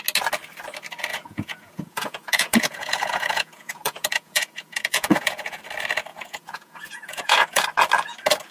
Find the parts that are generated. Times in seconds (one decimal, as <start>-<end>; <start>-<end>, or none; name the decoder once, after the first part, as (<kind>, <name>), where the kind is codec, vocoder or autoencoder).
1.1-5.6 (vocoder, Vocos); 6.1-7.6

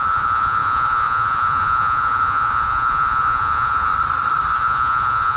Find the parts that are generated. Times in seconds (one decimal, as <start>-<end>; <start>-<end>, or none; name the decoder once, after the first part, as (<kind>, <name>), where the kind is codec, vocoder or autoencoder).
0.0-3.9 (vocoder, Vocos); 4.5-5.4

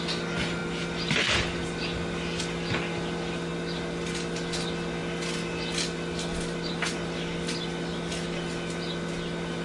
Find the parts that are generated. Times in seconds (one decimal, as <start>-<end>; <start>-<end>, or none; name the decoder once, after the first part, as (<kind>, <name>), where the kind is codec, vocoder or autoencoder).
none

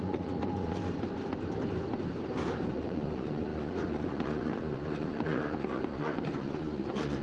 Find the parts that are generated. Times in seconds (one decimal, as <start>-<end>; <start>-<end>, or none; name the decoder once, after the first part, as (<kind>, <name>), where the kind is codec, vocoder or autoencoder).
0.0-0.8 (vocoder, Vocos); 2.7-7.2

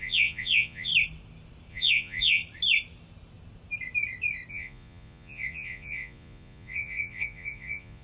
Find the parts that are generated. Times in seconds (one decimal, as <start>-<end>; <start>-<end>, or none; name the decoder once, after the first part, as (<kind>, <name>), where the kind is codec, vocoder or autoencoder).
0.0-0.9 (vocoder, Vocos); 1.7-2.4; 4.5-8.0